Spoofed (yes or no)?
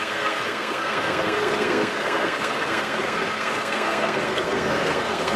yes